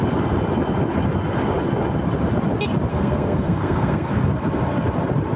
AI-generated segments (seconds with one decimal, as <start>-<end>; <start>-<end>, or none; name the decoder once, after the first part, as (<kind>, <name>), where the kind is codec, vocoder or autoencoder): 2.9-4.3 (codec, SNAC)